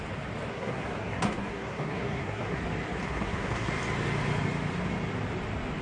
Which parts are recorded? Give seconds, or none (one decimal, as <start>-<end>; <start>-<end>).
0.0-0.5; 2.6-3.0; 3.7-5.8